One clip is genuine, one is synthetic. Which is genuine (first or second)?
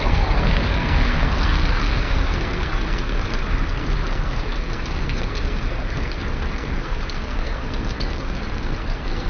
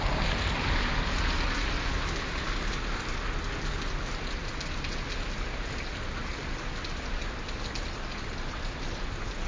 second